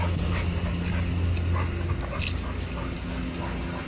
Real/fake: real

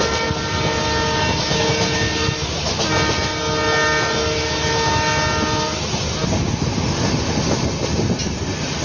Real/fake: real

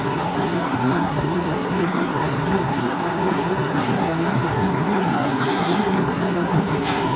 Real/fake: fake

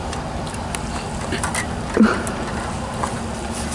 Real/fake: real